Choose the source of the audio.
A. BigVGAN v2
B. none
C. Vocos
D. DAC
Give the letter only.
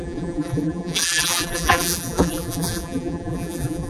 A